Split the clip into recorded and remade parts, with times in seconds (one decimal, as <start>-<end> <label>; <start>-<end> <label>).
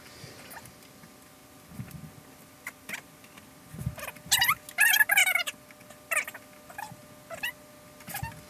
0.0-8.5 recorded